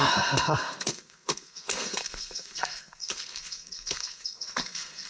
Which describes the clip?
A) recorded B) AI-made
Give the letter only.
B